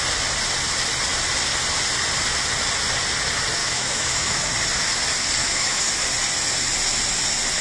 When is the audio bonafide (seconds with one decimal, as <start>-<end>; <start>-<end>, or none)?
0.0-3.6; 4.4-5.4; 5.9-7.6